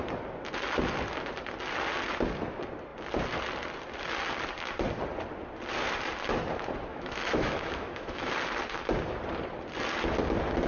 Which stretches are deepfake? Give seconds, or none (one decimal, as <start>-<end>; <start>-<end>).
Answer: 6.9-8.3